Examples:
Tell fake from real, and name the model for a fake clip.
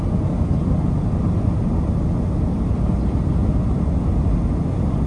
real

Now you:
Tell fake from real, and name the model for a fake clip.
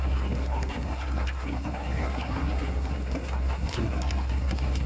fake, codec, SNAC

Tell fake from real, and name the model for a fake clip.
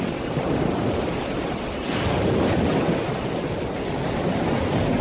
real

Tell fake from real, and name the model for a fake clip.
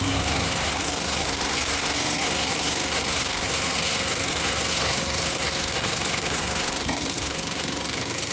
fake, codec, SNAC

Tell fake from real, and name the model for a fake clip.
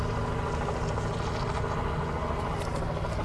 real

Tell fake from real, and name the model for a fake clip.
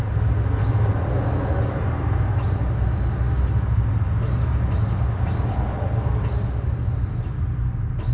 real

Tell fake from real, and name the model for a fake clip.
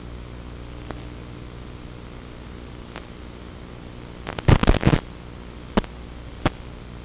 real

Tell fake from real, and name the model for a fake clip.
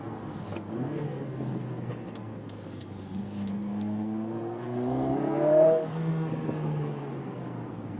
fake, codec, SNAC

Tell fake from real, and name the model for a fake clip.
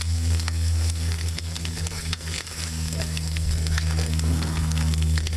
fake, codec, SNAC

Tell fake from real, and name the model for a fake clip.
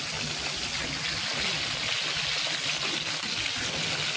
real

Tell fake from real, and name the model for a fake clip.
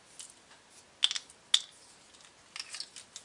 real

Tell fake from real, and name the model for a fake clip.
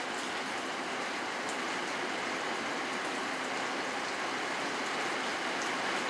real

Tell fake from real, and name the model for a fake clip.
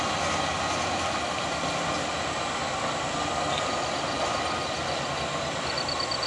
real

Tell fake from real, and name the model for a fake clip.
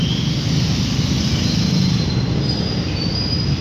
real